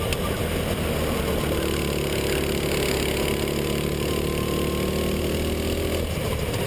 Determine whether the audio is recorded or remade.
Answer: recorded